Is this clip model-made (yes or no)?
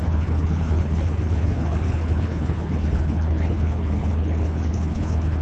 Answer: yes